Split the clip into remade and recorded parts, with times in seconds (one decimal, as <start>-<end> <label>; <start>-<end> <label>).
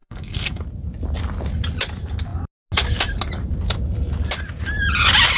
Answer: 0.0-0.6 remade; 0.6-5.4 recorded